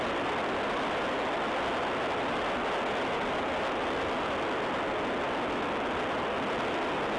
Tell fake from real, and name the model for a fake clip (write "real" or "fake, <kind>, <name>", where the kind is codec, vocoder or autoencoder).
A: real